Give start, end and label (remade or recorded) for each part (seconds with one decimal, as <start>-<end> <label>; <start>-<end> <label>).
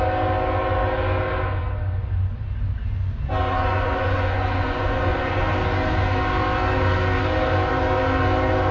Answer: 0.0-3.4 recorded; 3.4-5.4 remade; 5.4-8.7 recorded